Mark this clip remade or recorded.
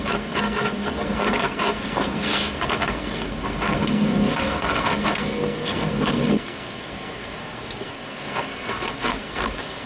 remade